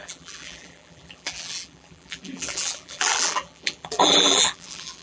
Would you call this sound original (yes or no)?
no